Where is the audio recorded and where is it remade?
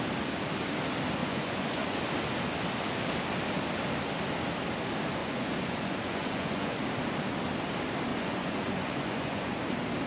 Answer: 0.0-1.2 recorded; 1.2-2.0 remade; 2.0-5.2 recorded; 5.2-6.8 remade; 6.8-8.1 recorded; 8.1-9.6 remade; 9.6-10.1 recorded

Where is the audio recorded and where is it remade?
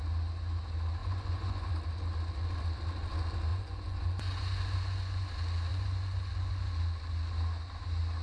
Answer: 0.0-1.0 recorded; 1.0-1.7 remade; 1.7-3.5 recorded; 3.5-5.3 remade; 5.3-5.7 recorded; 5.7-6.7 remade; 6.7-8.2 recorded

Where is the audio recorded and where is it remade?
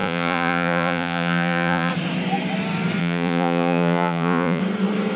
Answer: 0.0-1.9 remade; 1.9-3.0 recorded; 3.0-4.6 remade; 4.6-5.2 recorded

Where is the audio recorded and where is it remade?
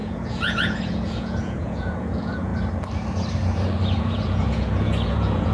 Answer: 0.0-2.5 remade; 2.5-4.0 recorded; 4.0-5.5 remade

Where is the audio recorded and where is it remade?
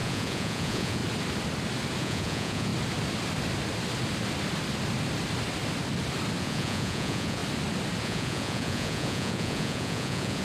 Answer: 0.0-1.0 remade; 1.0-2.0 recorded; 2.0-2.7 remade; 2.7-6.4 recorded; 6.4-7.4 remade; 7.4-8.0 recorded; 8.0-10.4 remade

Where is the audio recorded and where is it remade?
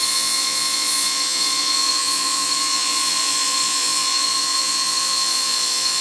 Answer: 0.0-6.0 remade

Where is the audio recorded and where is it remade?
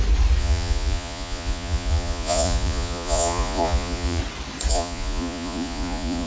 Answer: 0.0-0.4 recorded; 0.4-4.2 remade; 4.2-4.7 recorded; 4.7-6.3 remade